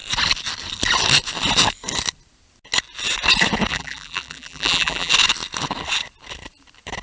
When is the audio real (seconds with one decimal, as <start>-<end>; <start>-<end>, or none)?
0.0-3.7; 5.1-7.0